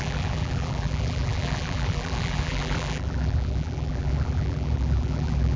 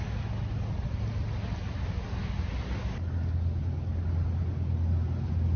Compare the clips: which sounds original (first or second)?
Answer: second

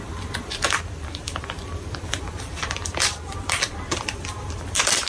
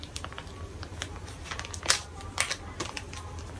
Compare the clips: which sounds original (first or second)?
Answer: second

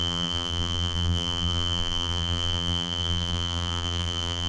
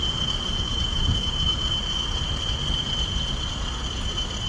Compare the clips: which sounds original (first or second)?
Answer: second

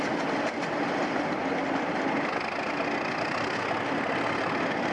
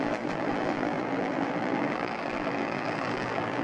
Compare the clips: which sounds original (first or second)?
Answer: first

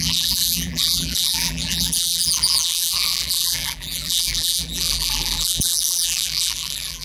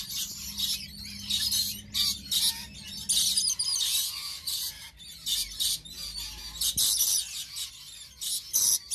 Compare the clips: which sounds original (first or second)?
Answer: second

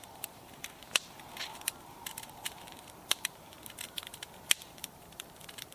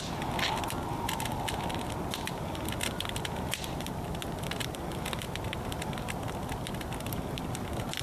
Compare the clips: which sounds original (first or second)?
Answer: second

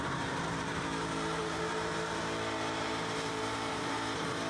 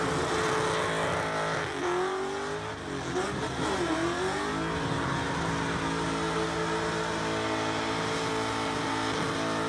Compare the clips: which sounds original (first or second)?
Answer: second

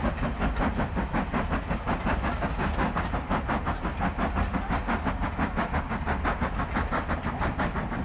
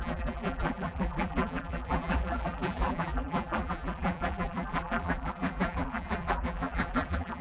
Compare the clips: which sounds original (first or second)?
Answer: first